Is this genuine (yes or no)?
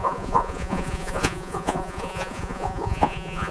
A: no